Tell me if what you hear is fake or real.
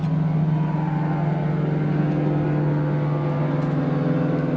real